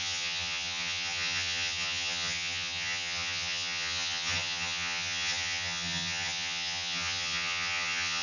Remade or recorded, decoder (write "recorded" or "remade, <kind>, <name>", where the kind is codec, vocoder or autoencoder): remade, vocoder, HiFi-GAN